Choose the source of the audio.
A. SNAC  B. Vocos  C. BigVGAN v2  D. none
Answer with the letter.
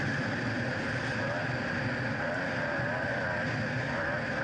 D